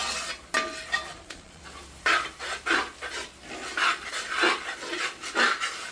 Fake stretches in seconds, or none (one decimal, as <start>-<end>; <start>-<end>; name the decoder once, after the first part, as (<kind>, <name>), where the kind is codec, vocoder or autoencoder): 1.1-1.6 (vocoder, Vocos)